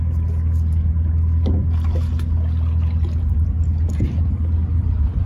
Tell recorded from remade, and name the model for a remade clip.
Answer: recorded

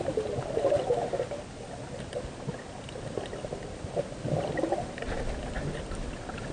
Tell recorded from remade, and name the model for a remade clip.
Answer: recorded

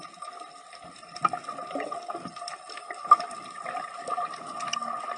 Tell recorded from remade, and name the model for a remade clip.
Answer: recorded